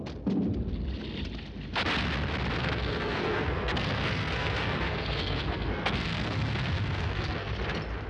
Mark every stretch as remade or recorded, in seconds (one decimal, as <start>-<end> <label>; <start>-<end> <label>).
0.0-2.6 recorded; 2.6-7.5 remade; 7.5-8.1 recorded